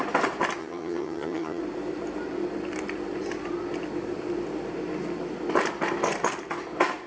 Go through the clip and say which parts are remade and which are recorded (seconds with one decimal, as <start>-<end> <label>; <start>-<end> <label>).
0.0-0.6 recorded; 0.6-1.6 remade; 1.6-7.1 recorded